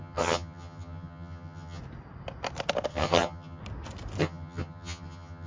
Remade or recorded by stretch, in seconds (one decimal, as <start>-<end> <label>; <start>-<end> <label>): 0.0-1.8 remade; 1.8-2.9 recorded; 2.9-3.6 remade; 3.6-4.2 recorded; 4.2-5.5 remade